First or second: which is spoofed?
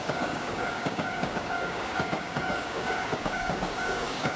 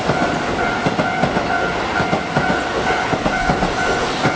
first